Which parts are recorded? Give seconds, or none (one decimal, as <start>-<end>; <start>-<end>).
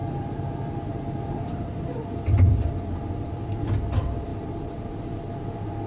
3.5-4.3; 4.8-5.9